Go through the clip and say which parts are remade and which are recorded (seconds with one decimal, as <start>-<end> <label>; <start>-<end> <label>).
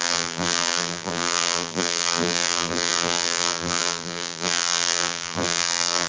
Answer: 0.0-6.1 remade